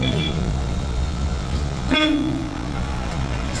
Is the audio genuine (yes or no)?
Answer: no